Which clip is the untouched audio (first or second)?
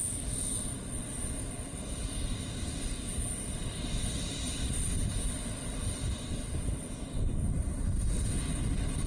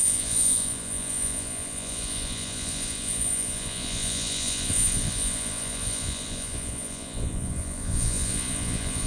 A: first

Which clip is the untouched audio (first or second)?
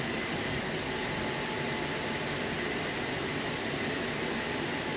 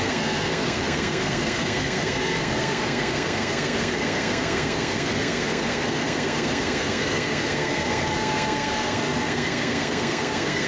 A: first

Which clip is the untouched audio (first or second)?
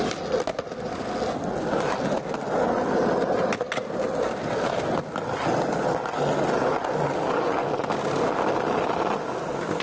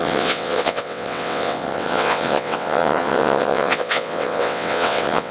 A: first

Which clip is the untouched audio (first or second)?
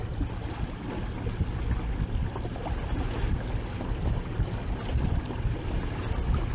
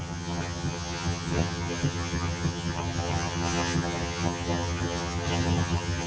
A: first